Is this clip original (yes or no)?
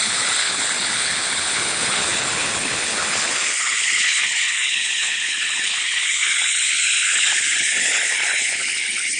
no